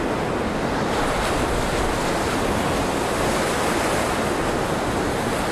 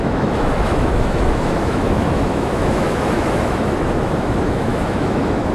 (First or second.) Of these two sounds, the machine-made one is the second